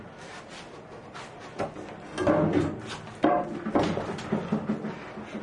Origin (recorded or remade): recorded